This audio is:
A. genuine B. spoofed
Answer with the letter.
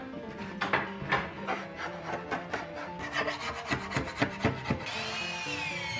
A